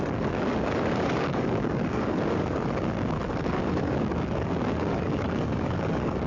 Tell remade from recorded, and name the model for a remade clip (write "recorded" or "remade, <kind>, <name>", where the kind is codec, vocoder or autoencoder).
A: remade, codec, DAC